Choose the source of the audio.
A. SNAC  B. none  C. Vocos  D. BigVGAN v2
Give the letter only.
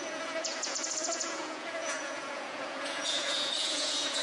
C